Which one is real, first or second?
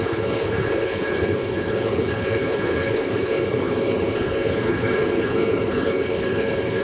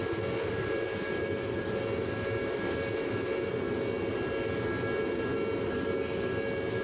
second